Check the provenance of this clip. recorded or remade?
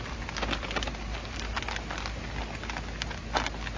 recorded